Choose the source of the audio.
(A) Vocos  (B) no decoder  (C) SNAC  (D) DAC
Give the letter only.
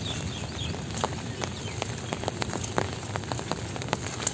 B